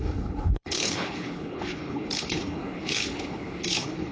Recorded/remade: remade